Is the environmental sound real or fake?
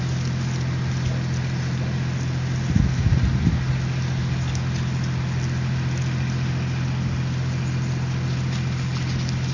real